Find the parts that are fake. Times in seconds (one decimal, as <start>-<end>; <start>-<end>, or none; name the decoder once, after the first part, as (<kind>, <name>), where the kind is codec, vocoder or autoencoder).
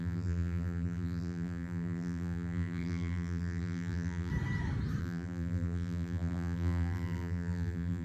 0.0-4.3 (vocoder, BigVGAN v2); 5.0-8.0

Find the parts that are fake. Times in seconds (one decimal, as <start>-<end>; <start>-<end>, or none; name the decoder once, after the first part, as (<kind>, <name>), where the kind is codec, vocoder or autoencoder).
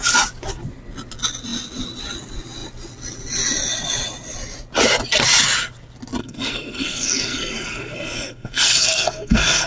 6.2-9.7 (codec, SNAC)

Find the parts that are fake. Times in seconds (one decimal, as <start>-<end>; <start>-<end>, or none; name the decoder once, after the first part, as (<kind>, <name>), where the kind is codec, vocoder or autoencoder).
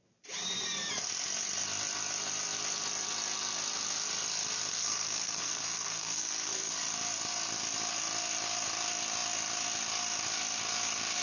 4.7-6.7 (codec, SNAC)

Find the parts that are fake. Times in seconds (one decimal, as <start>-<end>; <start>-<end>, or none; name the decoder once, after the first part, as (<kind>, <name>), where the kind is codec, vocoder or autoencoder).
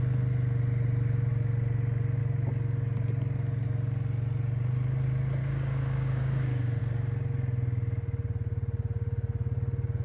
5.4-6.8 (codec, DAC)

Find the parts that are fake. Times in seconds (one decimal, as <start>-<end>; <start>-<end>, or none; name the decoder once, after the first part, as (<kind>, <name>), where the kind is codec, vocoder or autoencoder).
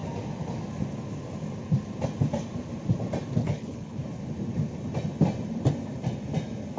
3.4-4.0 (codec, HILCodec)